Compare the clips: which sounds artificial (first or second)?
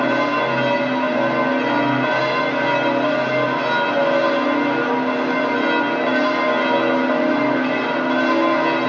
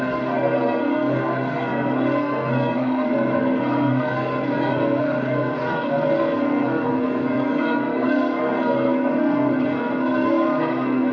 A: second